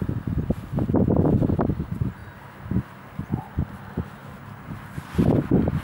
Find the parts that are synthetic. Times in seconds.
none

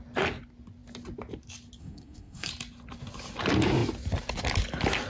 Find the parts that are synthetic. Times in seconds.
1.8-2.5 (codec, SNAC)

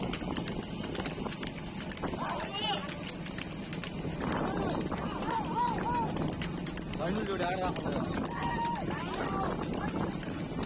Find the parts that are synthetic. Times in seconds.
none

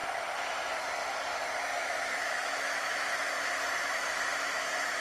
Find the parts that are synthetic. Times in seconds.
1.7-5.0 (autoencoder, DAC-VAE)

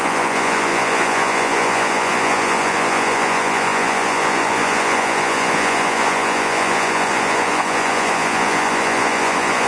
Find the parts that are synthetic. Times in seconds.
0.0-9.7 (vocoder, Vocos)